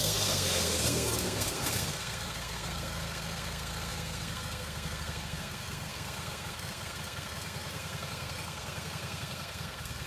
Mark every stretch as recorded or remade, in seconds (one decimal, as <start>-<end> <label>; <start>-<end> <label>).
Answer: 0.0-10.1 remade